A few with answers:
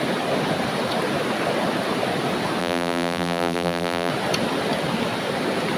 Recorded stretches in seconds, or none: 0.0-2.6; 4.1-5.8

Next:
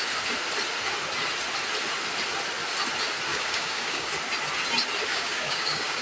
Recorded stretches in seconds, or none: 0.0-3.3; 4.1-5.1

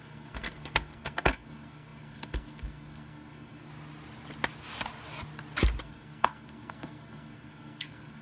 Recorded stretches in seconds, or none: 3.7-5.8

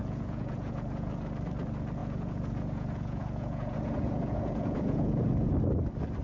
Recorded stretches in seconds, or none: 1.1-2.0; 5.5-6.2